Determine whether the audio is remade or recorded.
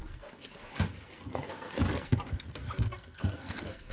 remade